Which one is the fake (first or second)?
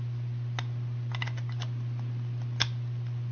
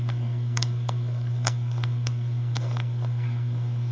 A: second